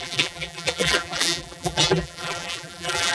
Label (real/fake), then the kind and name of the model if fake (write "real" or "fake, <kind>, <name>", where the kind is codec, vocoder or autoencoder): fake, vocoder, BigVGAN v2